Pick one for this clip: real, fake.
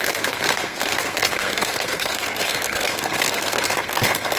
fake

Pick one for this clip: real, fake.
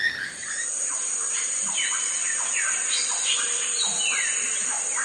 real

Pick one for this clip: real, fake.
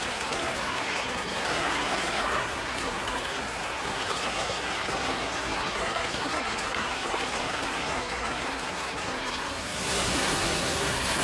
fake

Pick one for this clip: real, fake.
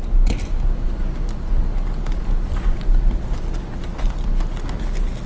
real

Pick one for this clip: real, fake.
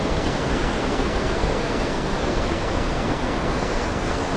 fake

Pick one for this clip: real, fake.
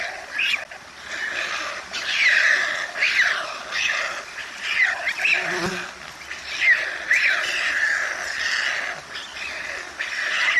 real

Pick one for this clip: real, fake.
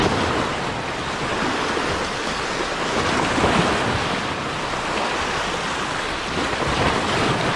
real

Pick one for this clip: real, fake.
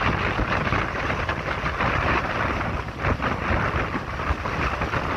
real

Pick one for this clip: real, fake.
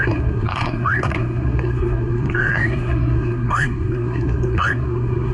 fake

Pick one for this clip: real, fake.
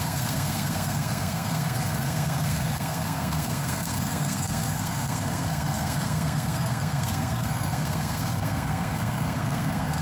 fake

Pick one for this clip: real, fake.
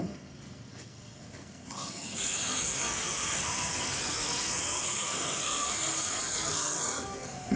fake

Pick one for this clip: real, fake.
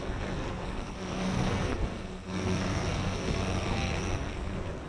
fake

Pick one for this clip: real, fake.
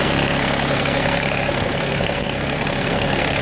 fake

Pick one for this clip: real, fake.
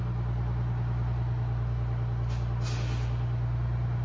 real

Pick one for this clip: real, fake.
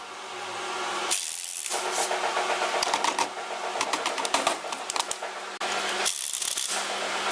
real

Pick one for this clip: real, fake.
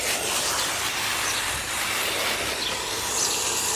real